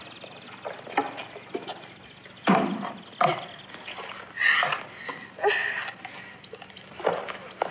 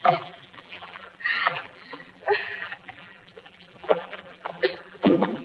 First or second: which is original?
first